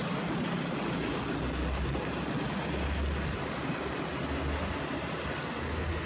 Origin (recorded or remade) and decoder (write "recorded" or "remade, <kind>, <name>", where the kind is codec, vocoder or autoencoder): recorded